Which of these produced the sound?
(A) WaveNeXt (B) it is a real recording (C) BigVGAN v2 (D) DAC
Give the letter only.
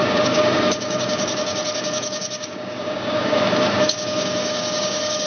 D